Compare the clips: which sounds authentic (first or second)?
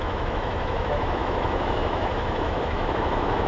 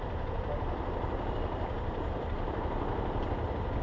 second